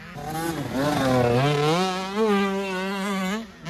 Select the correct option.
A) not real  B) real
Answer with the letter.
B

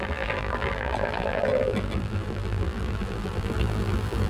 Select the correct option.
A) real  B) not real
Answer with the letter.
B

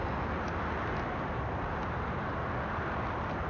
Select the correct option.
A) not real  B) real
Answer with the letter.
B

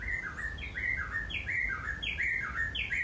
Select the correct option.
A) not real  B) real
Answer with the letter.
B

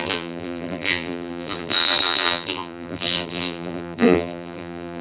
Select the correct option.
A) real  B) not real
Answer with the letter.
B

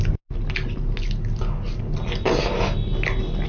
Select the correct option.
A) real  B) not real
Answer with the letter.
A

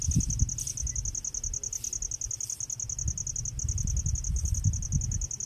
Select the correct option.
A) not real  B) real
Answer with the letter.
B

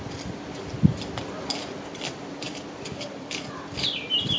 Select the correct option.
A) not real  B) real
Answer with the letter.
A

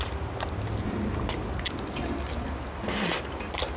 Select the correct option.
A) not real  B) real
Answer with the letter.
B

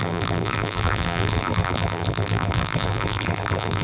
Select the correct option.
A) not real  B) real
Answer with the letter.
A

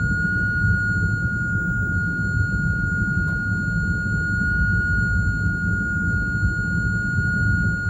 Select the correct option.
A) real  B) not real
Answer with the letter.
A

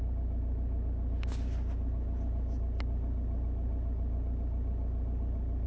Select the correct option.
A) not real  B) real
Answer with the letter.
B